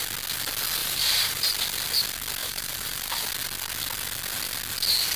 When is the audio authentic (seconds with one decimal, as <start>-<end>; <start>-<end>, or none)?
0.0-0.8; 1.5-2.4; 3.3-5.2